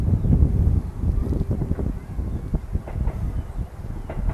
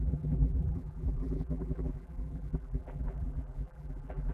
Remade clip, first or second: second